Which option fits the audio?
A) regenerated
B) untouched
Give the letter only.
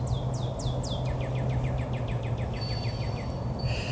B